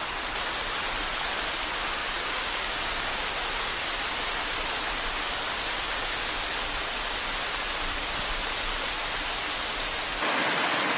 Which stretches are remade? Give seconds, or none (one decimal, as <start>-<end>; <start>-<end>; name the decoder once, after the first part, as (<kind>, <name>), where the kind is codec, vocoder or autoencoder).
2.0-3.3 (codec, DAC)